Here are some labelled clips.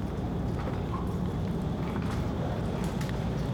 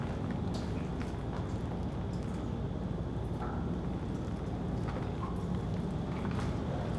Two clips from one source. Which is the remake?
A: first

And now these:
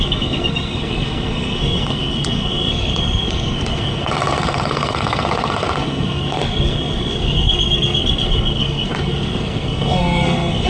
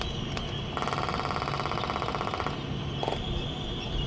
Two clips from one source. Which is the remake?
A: first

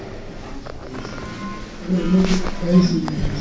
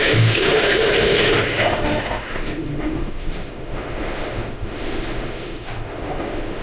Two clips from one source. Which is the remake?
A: second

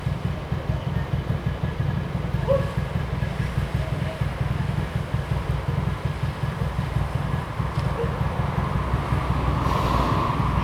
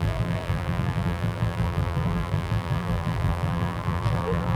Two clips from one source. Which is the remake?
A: second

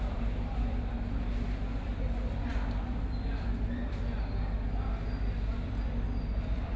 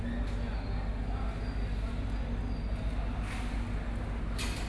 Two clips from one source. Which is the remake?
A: first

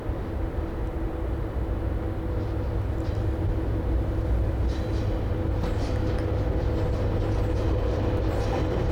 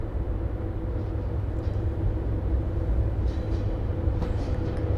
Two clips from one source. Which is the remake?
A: second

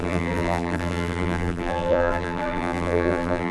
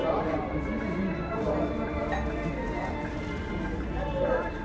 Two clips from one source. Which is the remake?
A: first